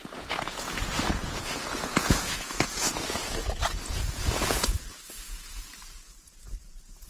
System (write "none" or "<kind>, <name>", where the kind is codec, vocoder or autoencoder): vocoder, Vocos